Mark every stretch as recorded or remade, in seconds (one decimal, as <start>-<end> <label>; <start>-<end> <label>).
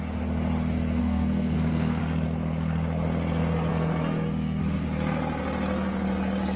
0.0-1.0 recorded; 1.0-2.0 remade; 2.0-3.7 recorded; 3.7-4.6 remade; 4.6-6.6 recorded